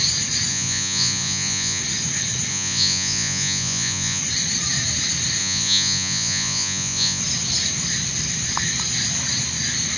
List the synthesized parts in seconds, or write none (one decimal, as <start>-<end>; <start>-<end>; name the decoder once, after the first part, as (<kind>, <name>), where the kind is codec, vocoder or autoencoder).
0.5-1.8 (vocoder, Vocos); 2.5-4.2; 5.4-7.2